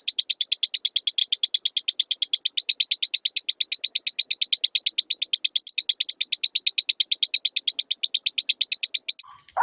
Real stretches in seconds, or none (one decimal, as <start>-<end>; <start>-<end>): 0.0-9.6